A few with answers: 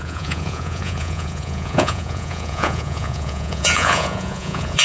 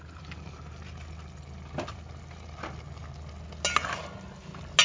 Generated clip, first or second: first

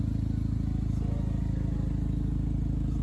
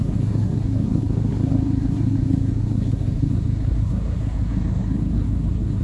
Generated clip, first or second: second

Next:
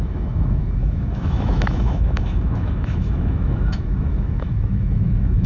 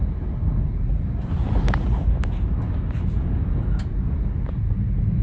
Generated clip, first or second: first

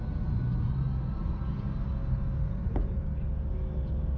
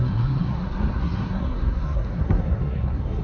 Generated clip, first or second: second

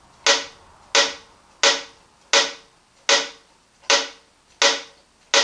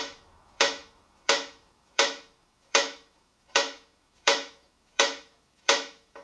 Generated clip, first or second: second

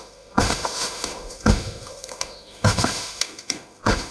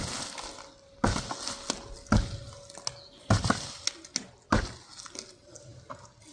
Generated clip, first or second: first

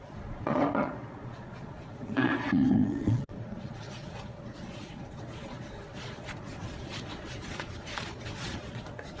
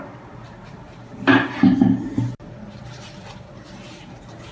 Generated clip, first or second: first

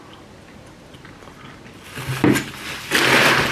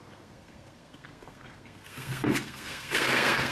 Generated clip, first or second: second